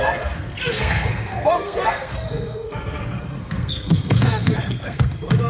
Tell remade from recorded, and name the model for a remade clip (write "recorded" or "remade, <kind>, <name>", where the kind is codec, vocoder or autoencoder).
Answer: remade, codec, SNAC